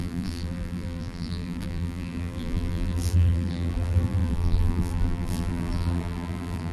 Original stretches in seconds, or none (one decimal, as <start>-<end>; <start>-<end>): none